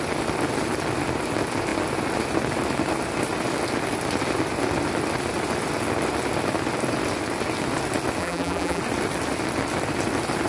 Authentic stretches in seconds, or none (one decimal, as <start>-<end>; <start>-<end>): 0.0-8.2; 8.8-10.5